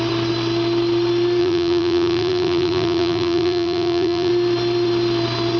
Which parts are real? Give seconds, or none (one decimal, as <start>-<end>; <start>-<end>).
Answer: 0.0-1.4; 4.3-5.6